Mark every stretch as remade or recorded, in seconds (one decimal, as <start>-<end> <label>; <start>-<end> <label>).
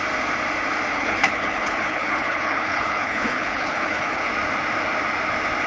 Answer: 0.0-0.9 recorded; 0.9-4.3 remade; 4.3-5.7 recorded